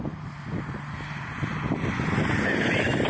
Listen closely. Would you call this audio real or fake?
fake